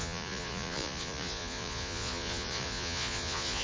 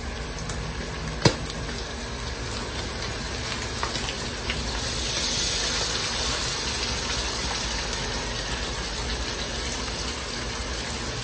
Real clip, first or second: second